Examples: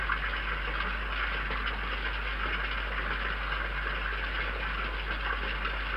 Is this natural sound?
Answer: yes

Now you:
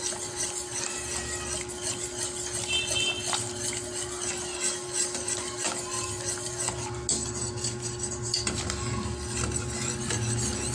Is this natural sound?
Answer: yes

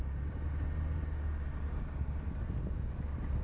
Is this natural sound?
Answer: yes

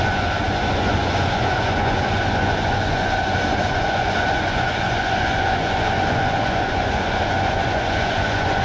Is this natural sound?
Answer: no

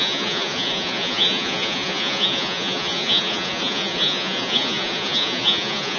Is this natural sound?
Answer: no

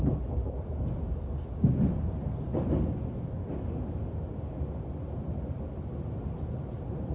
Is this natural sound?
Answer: yes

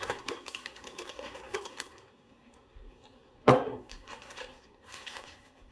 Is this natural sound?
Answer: no